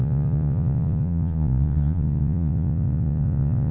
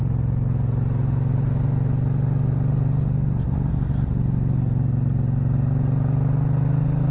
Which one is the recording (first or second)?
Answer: second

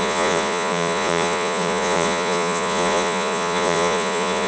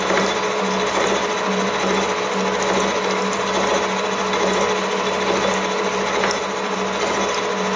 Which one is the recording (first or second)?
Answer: second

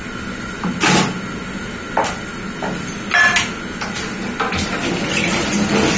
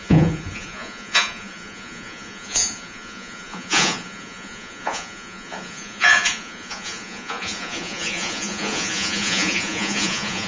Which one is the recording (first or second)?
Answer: first